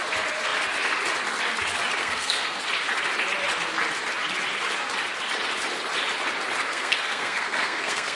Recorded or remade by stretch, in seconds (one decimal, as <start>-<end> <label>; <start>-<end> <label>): 0.0-2.0 recorded; 2.0-2.6 remade; 2.6-6.7 recorded; 6.7-8.2 remade